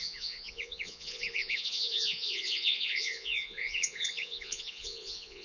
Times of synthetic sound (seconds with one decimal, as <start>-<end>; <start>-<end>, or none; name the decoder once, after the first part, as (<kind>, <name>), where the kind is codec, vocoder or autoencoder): 0.0-5.4 (vocoder, Vocos)